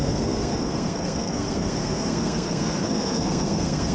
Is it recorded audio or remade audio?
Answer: remade